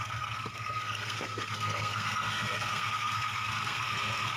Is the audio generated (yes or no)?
yes